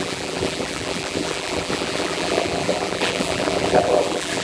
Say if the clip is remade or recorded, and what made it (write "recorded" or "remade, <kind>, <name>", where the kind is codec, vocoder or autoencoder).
remade, vocoder, BigVGAN v2